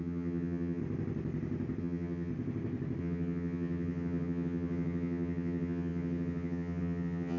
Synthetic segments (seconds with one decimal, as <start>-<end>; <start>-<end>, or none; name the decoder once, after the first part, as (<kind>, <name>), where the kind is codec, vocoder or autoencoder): 0.0-0.8 (vocoder, HiFi-GAN); 1.8-2.3; 3.0-7.4